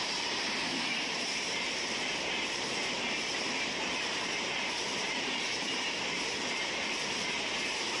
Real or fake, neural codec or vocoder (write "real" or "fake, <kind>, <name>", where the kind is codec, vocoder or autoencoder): fake, vocoder, BigVGAN v2